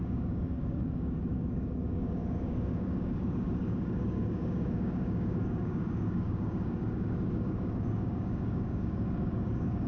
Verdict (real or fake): fake